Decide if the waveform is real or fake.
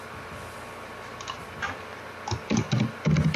real